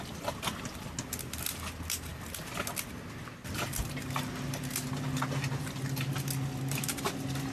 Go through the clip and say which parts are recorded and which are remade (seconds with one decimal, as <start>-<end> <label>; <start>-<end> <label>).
0.0-7.5 recorded